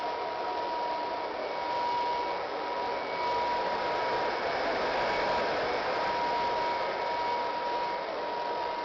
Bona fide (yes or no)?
yes